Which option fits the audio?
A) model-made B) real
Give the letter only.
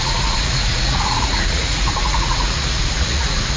A